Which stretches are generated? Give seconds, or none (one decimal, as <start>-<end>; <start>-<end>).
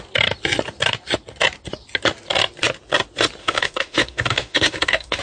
3.4-5.2